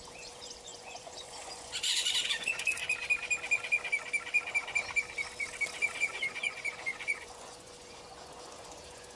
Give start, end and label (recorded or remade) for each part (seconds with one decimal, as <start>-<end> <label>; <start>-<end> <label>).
0.0-2.8 remade; 2.8-6.0 recorded; 6.0-9.2 remade